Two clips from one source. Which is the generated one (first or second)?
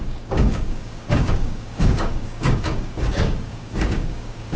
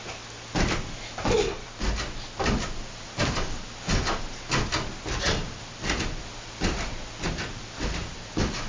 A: first